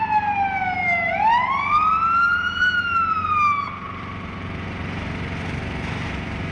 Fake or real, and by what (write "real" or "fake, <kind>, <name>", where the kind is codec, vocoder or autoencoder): real